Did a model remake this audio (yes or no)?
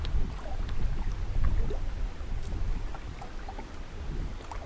no